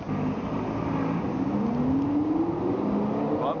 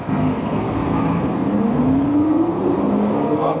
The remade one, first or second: second